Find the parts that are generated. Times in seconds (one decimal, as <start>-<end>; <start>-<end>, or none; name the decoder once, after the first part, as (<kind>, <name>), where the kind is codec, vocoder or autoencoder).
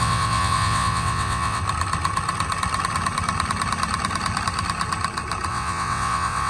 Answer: 0.0-1.6 (vocoder, WaveNeXt); 5.5-6.5